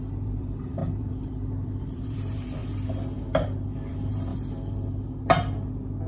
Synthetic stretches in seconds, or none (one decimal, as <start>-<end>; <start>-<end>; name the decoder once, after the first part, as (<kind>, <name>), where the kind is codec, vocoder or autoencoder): 0.0-2.6 (vocoder, BigVGAN v2); 3.9-4.3